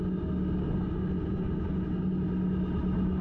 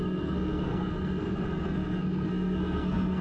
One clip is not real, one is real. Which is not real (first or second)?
second